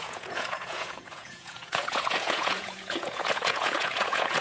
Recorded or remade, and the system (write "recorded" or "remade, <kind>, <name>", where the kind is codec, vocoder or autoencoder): remade, vocoder, Vocos